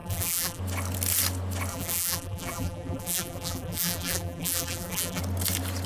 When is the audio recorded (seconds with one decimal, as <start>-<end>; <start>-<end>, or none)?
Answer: 0.6-1.7; 5.2-5.9